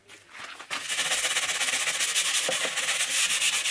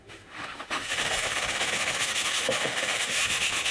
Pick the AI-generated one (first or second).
second